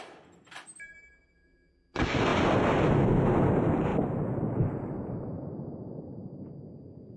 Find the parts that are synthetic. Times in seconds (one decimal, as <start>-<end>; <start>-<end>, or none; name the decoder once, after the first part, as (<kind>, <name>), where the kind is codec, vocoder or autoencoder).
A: none